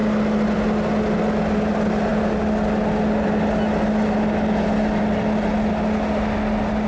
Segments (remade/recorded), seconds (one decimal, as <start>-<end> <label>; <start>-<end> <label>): 0.0-6.9 recorded